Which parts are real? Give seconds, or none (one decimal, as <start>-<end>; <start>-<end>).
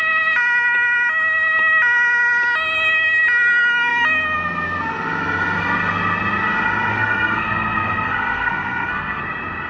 0.0-6.9; 9.2-9.7